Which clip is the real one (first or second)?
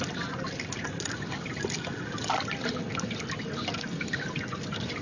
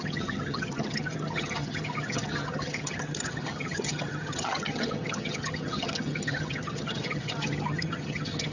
first